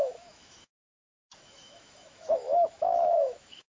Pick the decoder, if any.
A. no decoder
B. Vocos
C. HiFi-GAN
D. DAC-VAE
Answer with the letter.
D